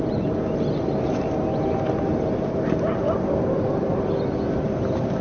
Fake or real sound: real